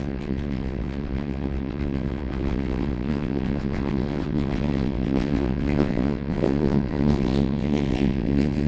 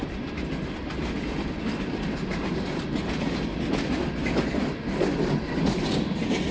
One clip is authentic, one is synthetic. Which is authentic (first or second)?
second